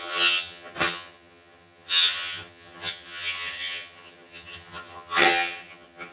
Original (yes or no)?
no